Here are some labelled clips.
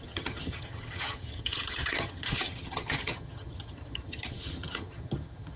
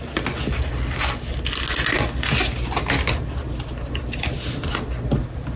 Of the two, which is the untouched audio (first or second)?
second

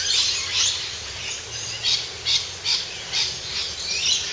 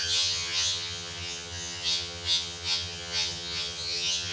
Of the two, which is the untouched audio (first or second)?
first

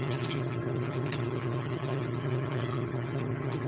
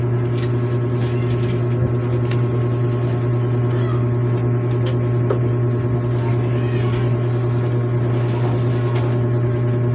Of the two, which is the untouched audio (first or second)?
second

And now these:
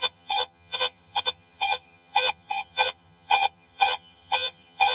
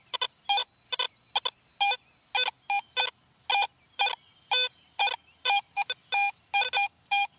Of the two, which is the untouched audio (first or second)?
second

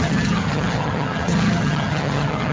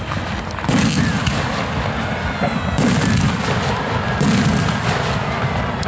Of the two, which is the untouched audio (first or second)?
second